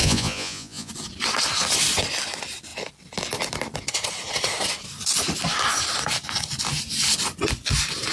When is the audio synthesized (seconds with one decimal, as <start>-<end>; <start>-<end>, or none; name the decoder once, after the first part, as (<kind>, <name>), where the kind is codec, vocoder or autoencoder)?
0.0-0.9 (vocoder, Vocos)